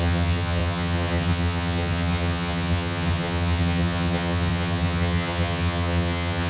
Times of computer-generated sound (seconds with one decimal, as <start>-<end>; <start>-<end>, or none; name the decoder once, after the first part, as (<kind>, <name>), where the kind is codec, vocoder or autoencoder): 0.0-6.5 (vocoder, HiFi-GAN)